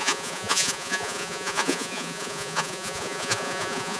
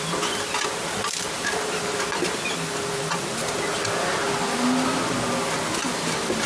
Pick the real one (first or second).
second